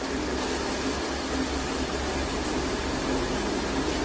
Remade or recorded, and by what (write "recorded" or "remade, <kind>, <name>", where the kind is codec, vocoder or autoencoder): recorded